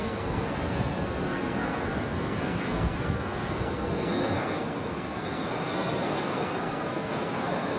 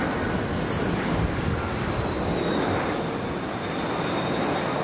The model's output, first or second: first